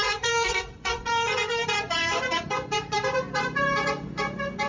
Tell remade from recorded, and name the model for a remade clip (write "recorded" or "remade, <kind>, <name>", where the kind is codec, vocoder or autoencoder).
remade, vocoder, Vocos